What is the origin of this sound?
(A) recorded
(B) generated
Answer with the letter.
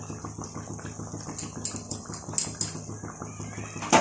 A